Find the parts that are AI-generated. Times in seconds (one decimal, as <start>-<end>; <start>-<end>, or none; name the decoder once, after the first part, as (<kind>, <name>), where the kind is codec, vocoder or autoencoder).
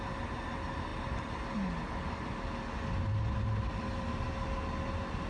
none